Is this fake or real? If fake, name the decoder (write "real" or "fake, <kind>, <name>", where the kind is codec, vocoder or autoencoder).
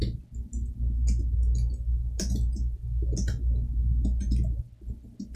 real